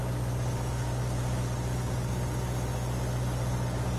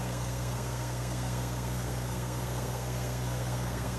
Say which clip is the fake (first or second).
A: second